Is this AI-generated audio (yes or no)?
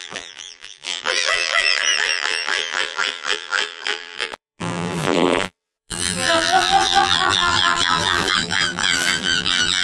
yes